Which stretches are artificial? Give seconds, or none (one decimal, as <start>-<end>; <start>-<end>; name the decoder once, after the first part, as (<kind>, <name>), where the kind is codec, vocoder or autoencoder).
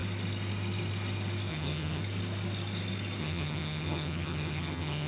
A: 1.5-2.0 (vocoder, HiFi-GAN); 3.2-5.1